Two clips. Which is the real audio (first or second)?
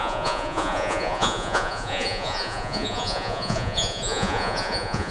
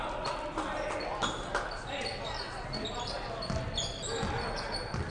second